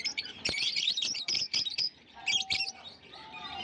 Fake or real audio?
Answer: fake